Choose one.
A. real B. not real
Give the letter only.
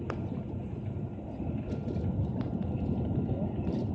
A